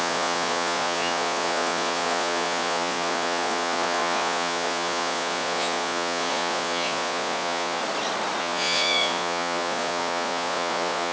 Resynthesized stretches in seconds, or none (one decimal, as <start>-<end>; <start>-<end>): 0.0-7.8; 8.4-11.1